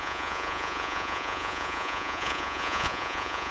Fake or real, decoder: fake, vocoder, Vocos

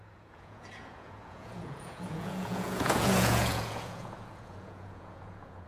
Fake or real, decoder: fake, vocoder, Vocos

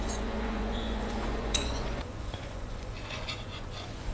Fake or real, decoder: fake, vocoder, Vocos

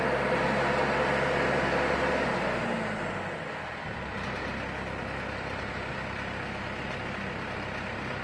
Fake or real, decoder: real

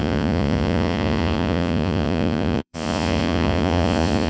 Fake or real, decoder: fake, vocoder, Vocos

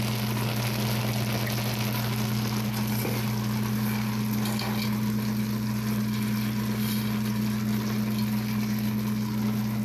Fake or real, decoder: real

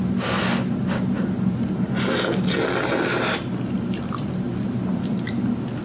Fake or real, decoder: real